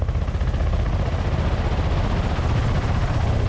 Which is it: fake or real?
real